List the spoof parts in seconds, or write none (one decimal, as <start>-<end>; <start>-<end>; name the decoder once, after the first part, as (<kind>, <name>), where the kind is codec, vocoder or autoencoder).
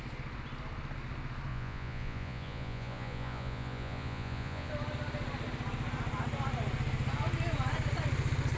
1.5-4.7 (vocoder, Vocos)